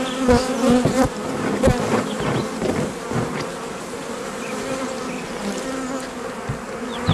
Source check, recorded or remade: recorded